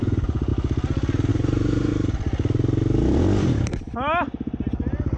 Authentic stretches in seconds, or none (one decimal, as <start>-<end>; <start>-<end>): 0.5-1.3; 1.9-5.2